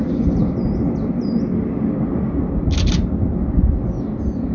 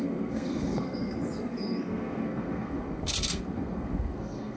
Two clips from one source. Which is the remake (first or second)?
second